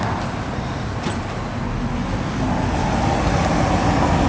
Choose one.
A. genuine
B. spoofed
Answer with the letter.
A